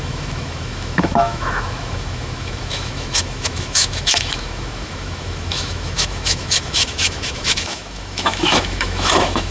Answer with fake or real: fake